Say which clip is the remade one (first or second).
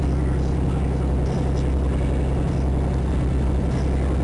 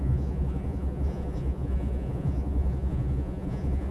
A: second